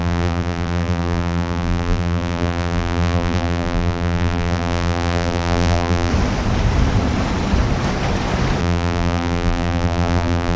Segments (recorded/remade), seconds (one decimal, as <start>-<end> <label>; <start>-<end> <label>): 0.0-6.1 remade; 6.1-8.6 recorded; 8.6-10.6 remade